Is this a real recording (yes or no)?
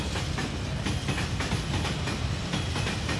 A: yes